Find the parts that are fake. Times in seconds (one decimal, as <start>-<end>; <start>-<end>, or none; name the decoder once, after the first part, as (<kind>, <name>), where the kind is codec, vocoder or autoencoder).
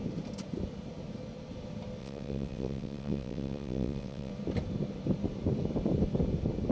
2.0-4.3 (vocoder, WaveNeXt)